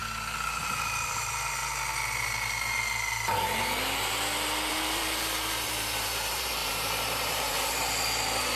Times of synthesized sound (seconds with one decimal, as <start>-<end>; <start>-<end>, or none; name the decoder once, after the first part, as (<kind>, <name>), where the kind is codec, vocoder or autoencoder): 0.6-1.6 (vocoder, BigVGAN v2); 4.7-8.6